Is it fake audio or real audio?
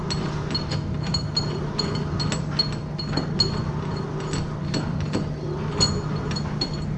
real